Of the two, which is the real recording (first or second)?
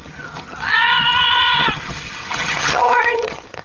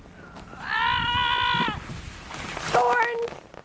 second